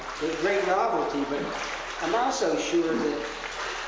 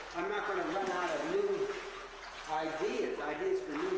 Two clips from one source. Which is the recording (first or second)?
first